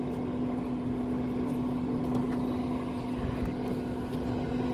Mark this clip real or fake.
real